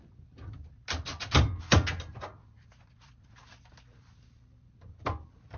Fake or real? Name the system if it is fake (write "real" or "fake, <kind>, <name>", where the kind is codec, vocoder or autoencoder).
real